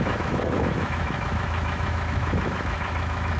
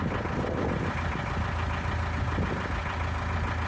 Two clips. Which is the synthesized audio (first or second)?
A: first